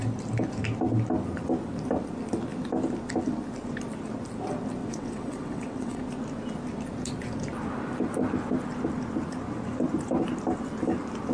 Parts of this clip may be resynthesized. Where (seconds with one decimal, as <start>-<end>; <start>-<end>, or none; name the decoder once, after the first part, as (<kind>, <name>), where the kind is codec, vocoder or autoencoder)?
4.8-6.0 (vocoder, WaveNeXt)